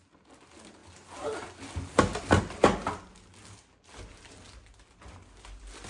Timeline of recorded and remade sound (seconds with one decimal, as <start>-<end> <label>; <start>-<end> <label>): 0.0-5.9 recorded